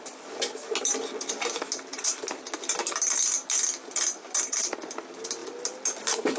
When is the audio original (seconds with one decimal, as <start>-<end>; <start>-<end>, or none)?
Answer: 0.0-6.4